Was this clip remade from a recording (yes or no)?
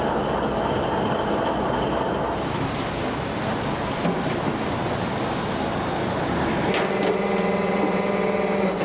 no